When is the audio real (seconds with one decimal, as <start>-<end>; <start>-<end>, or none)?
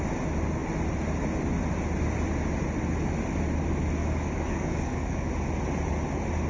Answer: 0.0-4.0; 5.3-6.5